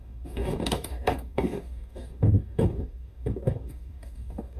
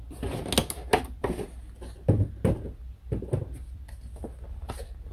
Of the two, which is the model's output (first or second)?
first